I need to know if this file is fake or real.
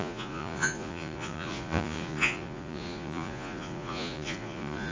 fake